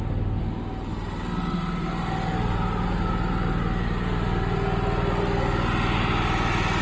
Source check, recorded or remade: recorded